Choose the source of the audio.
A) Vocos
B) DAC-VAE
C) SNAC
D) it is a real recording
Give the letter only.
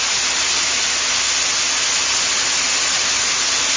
D